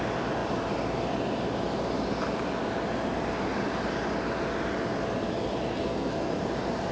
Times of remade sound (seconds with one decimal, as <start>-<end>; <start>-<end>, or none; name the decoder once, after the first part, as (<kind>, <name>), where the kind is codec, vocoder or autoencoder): 5.7-6.3 (codec, SNAC)